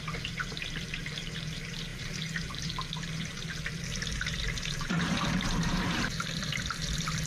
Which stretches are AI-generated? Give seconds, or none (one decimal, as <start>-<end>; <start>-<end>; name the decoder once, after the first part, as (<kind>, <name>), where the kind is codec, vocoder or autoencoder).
0.0-7.3 (vocoder, BigVGAN v2)